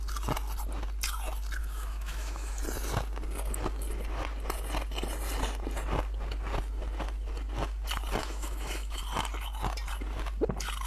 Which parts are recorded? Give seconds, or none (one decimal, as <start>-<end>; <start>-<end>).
0.0-1.6; 2.6-8.2; 9.0-10.9